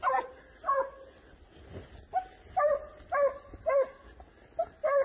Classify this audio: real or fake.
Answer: real